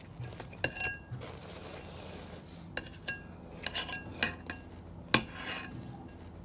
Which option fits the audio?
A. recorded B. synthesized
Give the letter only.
A